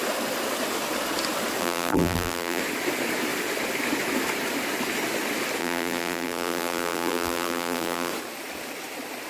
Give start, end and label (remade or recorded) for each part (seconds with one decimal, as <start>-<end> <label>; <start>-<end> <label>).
0.0-1.6 recorded; 1.6-2.6 remade; 2.6-5.6 recorded; 5.6-8.1 remade; 8.1-9.3 recorded